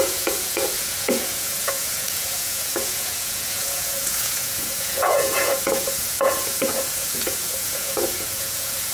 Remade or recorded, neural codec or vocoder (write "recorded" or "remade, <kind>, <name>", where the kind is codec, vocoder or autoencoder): remade, vocoder, Vocos